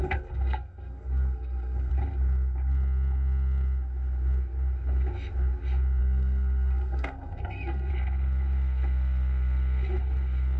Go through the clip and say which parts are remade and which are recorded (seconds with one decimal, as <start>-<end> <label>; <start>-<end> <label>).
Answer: 0.0-1.9 remade; 1.9-6.0 recorded; 6.0-7.9 remade; 7.9-10.6 recorded